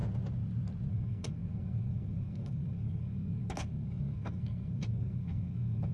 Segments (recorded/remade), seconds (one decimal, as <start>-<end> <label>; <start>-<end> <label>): 0.0-0.9 recorded; 0.9-5.9 remade